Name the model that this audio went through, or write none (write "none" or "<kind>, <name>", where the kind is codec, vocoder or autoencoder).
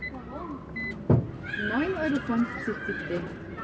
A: none